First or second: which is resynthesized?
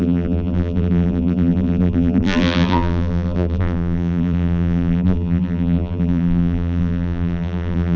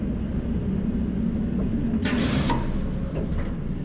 first